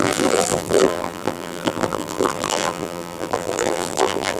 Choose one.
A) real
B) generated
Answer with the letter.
B